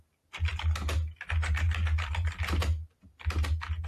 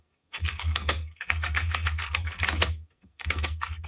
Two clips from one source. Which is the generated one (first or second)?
second